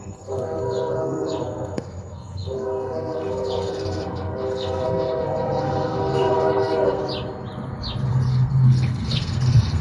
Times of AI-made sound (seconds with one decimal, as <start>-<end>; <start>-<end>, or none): 0.0-7.0; 8.1-9.8